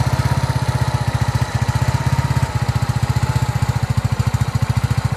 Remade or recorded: recorded